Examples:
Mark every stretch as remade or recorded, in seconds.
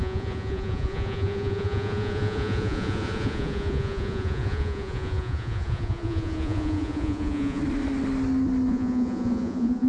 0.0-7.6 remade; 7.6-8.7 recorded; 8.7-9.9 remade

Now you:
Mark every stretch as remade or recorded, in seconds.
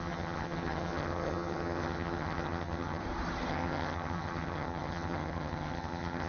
0.0-3.0 remade; 3.0-3.5 recorded; 3.5-6.3 remade